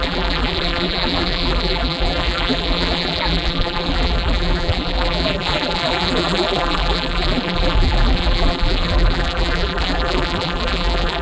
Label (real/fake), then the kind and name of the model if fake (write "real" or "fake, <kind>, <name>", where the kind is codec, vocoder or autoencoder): fake, vocoder, BigVGAN v2